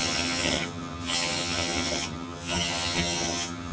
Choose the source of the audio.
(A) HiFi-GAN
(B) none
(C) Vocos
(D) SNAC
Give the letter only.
A